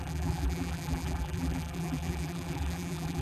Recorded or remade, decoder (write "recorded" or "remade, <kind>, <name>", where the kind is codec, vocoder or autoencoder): remade, vocoder, BigVGAN v2